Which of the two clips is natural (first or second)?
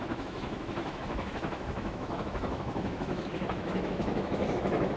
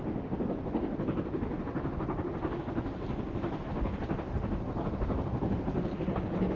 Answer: second